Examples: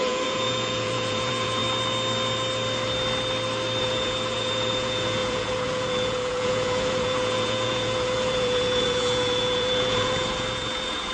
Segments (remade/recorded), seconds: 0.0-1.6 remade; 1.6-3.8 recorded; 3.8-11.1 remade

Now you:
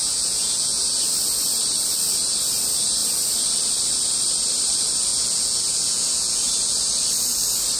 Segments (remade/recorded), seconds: 0.0-0.8 remade; 0.8-5.1 recorded; 5.1-6.6 remade; 6.6-7.8 recorded

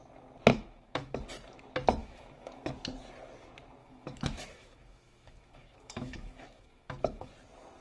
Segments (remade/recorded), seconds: 0.0-0.5 recorded; 0.5-1.2 remade; 1.2-2.0 recorded; 2.0-2.7 remade; 2.7-3.8 recorded; 3.8-7.3 remade; 7.3-7.8 recorded

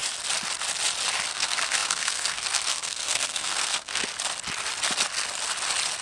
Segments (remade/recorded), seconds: 0.0-1.3 recorded; 1.3-4.1 remade; 4.1-6.0 recorded